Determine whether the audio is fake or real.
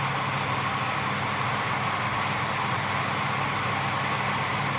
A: real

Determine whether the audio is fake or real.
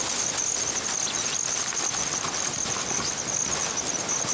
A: real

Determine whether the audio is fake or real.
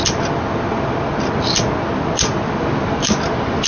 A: real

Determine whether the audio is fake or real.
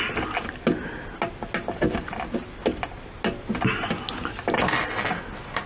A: real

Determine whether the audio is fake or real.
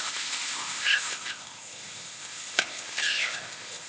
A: fake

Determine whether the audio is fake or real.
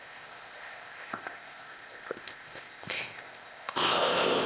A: fake